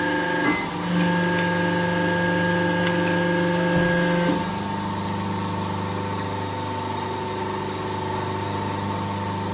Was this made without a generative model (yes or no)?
yes